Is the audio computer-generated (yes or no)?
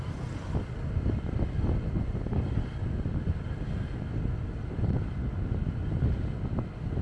no